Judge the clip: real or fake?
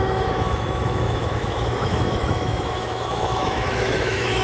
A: fake